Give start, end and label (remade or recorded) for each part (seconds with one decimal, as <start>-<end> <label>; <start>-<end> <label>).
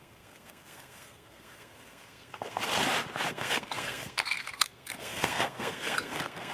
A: 0.0-2.6 remade; 2.6-3.3 recorded; 3.3-6.5 remade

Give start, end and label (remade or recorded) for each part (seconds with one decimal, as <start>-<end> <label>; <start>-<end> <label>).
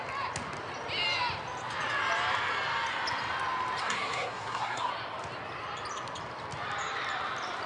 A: 0.0-3.8 recorded; 3.8-4.9 remade; 4.9-7.7 recorded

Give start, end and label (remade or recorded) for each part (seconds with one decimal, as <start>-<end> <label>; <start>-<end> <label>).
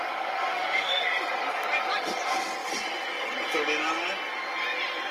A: 0.0-0.5 recorded; 0.5-1.1 remade; 1.1-5.1 recorded